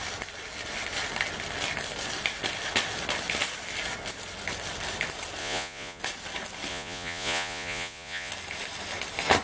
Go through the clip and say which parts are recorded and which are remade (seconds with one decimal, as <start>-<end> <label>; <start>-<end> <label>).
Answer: 0.0-5.4 recorded; 5.4-6.0 remade; 6.0-6.7 recorded; 6.7-8.3 remade; 8.3-9.4 recorded